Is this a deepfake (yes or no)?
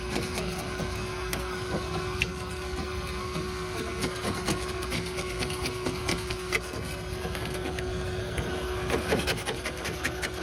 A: yes